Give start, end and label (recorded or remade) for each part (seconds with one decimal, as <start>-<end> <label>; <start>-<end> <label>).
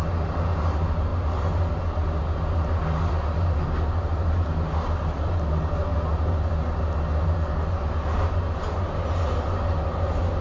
0.0-10.4 recorded